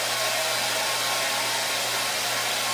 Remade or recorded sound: recorded